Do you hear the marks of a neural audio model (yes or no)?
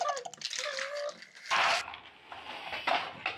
no